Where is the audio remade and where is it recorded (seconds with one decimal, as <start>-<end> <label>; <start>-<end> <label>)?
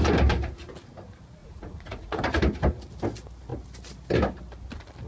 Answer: 0.0-1.4 recorded; 1.4-2.2 remade; 2.2-5.1 recorded